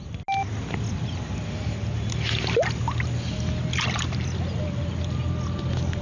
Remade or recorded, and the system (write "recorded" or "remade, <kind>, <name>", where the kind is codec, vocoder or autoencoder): recorded